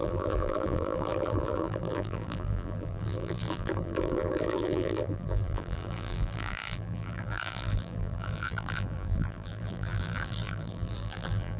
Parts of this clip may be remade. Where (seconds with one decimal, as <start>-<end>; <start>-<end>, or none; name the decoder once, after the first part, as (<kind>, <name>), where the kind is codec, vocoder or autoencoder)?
0.0-11.6 (vocoder, BigVGAN v2)

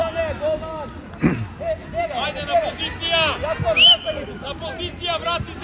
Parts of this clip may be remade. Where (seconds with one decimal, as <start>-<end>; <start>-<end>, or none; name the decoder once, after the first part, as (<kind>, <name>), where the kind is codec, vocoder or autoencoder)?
none

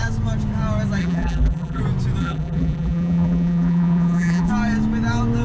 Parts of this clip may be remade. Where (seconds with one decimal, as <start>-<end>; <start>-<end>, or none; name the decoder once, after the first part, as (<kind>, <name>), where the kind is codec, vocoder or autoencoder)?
1.0-1.8 (vocoder, BigVGAN v2); 2.2-4.5

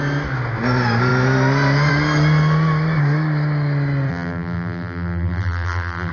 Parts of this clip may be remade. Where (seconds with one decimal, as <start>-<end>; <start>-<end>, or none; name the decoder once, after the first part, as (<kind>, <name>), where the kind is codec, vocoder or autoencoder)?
4.1-6.1 (vocoder, BigVGAN v2)

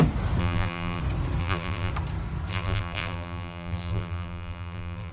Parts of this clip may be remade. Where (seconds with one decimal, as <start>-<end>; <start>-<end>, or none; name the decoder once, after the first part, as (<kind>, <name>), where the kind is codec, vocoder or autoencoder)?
0.4-1.0 (vocoder, BigVGAN v2); 1.4-1.9; 2.5-5.1

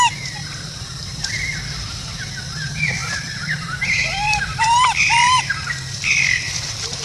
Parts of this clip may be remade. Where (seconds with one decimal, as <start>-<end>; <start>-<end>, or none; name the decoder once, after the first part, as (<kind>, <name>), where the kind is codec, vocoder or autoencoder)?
0.0-7.0 (vocoder, BigVGAN v2)

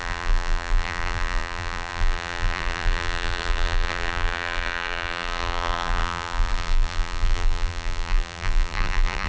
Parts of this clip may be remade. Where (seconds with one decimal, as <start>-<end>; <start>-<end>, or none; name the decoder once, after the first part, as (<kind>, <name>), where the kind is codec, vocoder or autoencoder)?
0.0-9.3 (vocoder, BigVGAN v2)